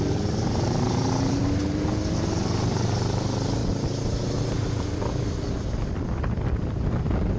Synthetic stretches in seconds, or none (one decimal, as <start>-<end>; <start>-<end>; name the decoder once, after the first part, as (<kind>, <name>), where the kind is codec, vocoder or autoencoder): 0.0-1.4 (vocoder, BigVGAN v2); 2.6-3.6; 5.9-7.4